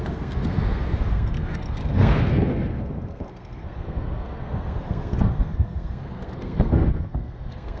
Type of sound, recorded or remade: remade